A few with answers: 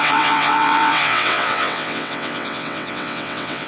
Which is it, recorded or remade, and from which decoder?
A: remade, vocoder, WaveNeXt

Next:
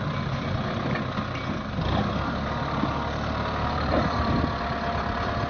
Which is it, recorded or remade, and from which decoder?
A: recorded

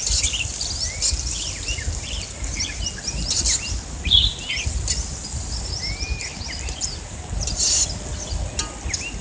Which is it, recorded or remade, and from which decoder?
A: recorded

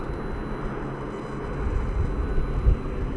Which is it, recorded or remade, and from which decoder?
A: recorded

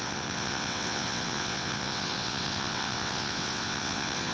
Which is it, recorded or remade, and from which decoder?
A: remade, vocoder, WaveNeXt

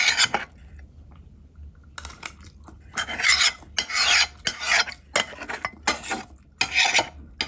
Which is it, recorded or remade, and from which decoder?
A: recorded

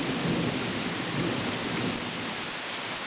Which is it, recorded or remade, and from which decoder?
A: recorded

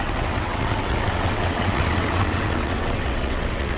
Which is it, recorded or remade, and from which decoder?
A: remade, vocoder, WaveNeXt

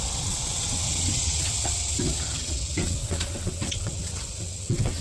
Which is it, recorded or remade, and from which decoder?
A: remade, vocoder, WaveNeXt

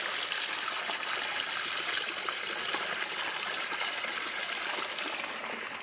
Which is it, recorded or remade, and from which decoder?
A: recorded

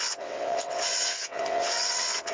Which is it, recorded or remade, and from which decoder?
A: remade, vocoder, WaveNeXt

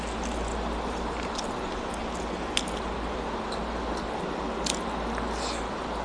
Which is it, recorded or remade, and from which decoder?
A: recorded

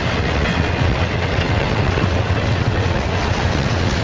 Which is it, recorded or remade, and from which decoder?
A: remade, vocoder, WaveNeXt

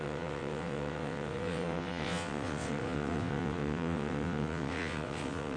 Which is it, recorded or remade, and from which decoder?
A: remade, vocoder, WaveNeXt